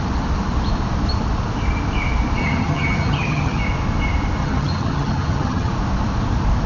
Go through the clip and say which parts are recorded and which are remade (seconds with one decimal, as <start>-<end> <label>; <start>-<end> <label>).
0.0-2.4 recorded; 2.4-3.6 remade; 3.6-4.4 recorded; 4.4-5.7 remade; 5.7-6.7 recorded